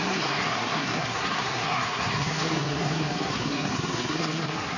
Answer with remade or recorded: remade